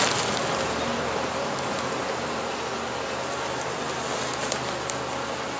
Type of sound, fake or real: real